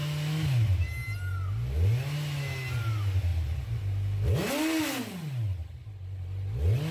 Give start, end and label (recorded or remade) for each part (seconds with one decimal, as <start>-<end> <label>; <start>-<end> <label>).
0.0-6.9 recorded